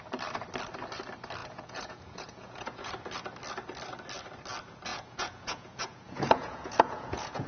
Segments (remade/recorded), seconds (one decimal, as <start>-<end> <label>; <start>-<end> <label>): 0.0-1.4 recorded; 1.4-2.9 remade; 2.9-4.9 recorded; 4.9-7.5 remade